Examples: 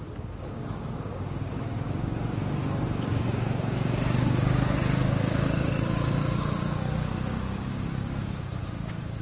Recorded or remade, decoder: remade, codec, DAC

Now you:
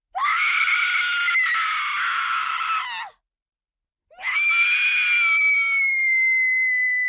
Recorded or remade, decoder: recorded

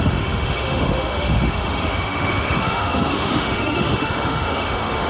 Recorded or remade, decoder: remade, autoencoder, DAC-VAE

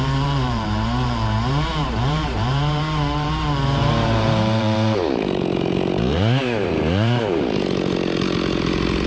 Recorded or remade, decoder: remade, vocoder, BigVGAN v2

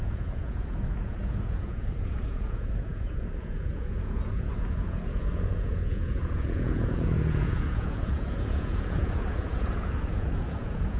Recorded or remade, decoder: remade, vocoder, Vocos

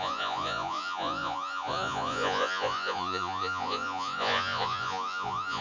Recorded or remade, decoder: remade, vocoder, Vocos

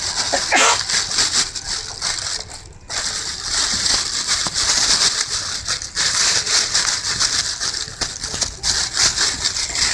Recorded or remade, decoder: recorded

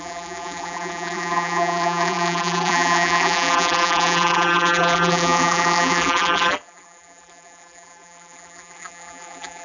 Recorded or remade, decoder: remade, vocoder, BigVGAN v2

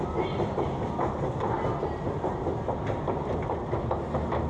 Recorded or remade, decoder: recorded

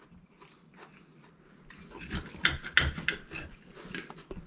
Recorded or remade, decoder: recorded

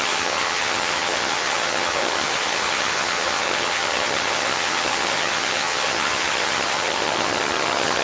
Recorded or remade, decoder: remade, vocoder, HiFi-GAN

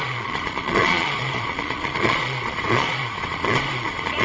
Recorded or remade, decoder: remade, vocoder, Vocos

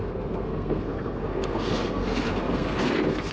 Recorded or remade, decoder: remade, codec, SNAC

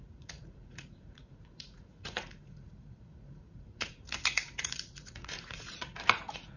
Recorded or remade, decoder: remade, vocoder, Vocos